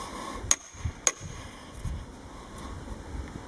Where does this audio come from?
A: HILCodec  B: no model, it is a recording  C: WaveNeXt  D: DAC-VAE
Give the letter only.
B